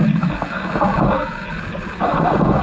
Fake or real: real